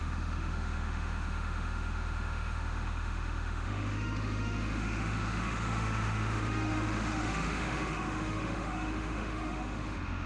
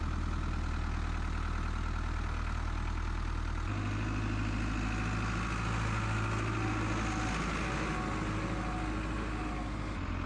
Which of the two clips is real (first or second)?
second